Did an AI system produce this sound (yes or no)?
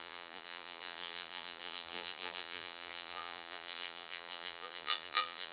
yes